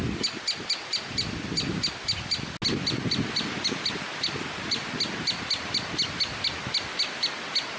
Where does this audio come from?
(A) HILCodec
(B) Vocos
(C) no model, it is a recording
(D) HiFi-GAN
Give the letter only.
C